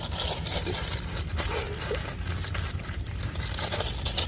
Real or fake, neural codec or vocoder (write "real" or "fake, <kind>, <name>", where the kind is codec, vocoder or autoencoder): real